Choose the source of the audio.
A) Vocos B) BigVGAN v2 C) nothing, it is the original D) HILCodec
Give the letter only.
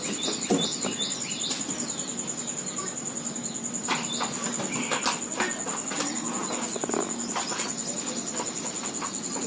C